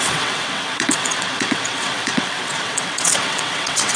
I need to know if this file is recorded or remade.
remade